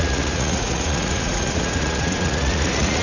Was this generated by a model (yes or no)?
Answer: yes